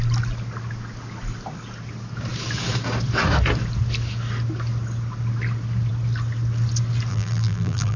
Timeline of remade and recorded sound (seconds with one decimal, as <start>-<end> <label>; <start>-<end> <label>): 0.0-7.1 recorded; 7.1-8.0 remade